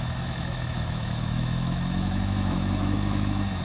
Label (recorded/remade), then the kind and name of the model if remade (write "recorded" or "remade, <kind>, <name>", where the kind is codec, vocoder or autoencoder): remade, autoencoder, DAC-VAE